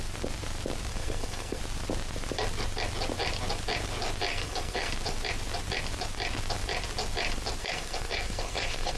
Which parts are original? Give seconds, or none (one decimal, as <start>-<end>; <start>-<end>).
0.0-0.9; 1.6-4.3; 4.9-7.6